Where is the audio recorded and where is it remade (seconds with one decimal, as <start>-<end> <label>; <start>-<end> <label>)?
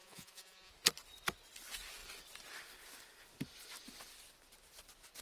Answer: 0.0-0.7 remade; 0.7-5.2 recorded